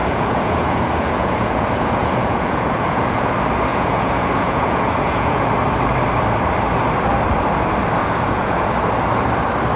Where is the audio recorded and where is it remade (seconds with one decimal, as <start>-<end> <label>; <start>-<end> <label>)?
0.0-3.3 remade; 3.3-3.7 recorded; 3.7-5.5 remade; 5.5-8.0 recorded; 8.0-8.7 remade; 8.7-9.8 recorded